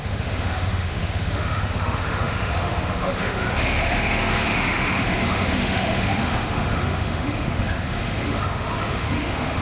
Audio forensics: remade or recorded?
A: remade